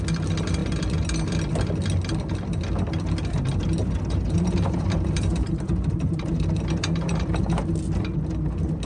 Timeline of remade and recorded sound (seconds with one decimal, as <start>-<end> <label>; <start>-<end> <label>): 0.0-3.8 recorded; 3.8-7.7 remade; 7.7-8.9 recorded